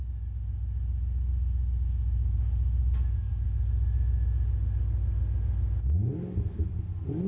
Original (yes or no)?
yes